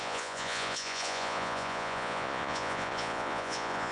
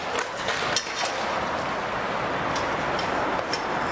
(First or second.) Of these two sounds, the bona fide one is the second